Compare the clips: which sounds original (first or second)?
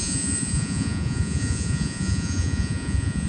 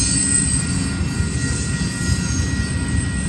second